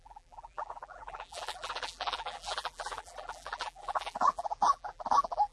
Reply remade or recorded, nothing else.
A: remade